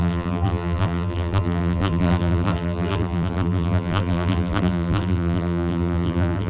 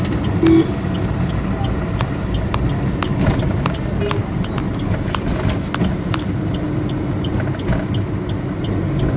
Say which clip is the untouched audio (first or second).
second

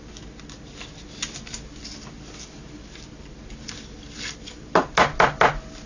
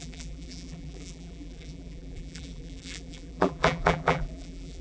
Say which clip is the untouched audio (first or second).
first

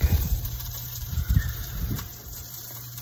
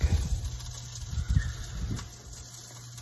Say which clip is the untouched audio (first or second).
second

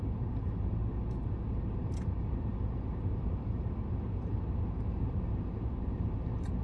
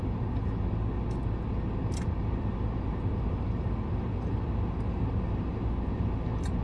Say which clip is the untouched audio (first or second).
second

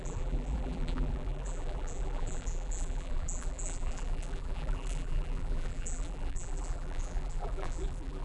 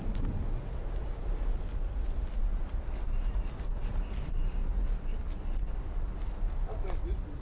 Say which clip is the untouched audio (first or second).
second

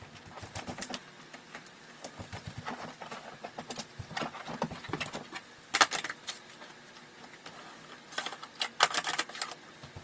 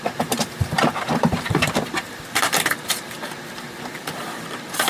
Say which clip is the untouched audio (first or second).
first